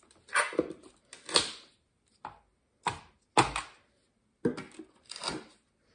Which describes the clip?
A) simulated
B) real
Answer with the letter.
B